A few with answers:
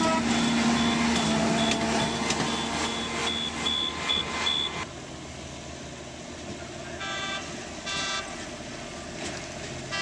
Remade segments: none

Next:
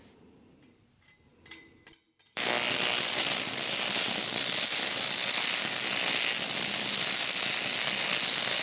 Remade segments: none

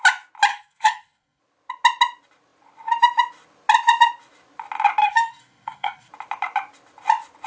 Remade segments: 0.5-1.4; 5.0-6.1

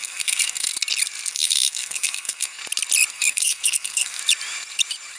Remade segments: 0.0-0.7; 1.3-2.6; 3.1-4.2

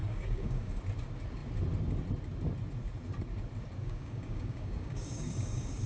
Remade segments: 0.0-0.8; 3.8-5.9

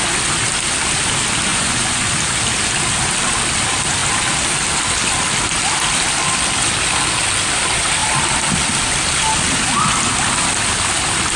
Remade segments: 1.5-2.1